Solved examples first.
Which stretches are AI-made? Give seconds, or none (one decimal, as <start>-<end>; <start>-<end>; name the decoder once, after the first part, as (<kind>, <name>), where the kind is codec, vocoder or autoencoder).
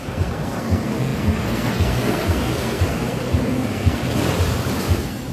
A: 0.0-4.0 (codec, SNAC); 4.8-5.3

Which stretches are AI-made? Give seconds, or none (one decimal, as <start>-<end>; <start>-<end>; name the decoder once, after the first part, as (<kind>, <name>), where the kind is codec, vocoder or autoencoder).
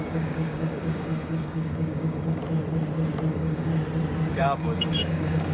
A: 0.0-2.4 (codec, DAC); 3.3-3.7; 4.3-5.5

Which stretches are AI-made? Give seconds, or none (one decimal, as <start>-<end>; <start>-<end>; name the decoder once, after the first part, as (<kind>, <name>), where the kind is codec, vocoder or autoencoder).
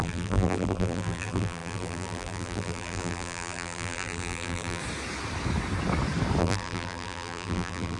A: 0.0-4.8 (vocoder, BigVGAN v2); 6.4-8.0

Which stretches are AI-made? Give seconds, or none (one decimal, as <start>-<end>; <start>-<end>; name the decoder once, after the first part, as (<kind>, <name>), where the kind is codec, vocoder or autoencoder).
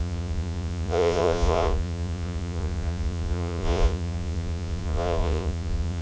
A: 0.0-6.0 (vocoder, Vocos)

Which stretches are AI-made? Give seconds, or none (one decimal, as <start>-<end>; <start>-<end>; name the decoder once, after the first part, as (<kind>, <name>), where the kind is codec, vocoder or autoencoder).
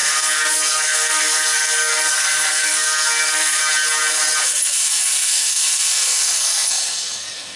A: 0.0-3.6 (codec, SNAC); 4.4-7.6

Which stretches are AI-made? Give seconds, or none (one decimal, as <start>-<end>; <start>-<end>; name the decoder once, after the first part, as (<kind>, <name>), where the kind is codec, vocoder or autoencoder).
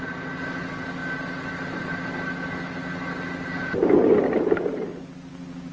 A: none